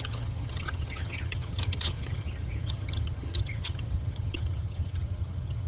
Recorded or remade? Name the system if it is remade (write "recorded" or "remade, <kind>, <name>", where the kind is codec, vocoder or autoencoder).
remade, vocoder, HiFi-GAN